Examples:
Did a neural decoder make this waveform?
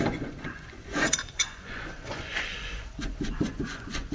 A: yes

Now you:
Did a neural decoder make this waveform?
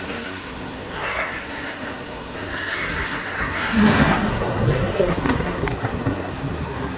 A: yes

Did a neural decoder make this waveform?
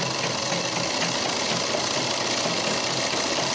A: no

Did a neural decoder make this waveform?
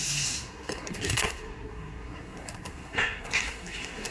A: yes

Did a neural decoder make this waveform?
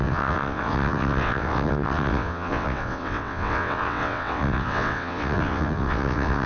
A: yes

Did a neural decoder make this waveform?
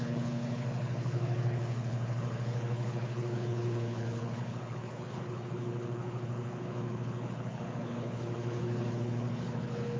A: yes